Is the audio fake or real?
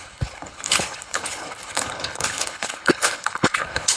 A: fake